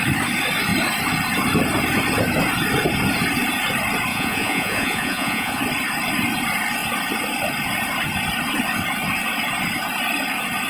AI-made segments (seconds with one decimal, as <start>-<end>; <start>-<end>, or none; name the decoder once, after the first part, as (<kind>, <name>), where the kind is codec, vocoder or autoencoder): 4.1-5.6 (vocoder, Vocos)